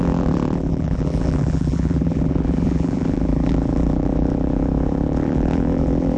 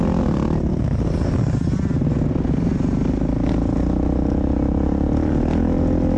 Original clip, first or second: second